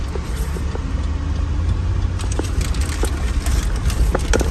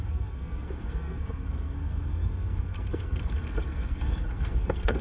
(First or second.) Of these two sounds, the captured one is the first